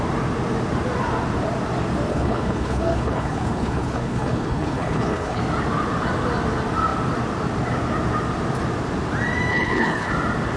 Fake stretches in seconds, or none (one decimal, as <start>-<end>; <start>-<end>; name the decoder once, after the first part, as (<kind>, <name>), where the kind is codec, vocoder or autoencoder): 2.1-5.4 (codec, HILCodec); 9.5-10.1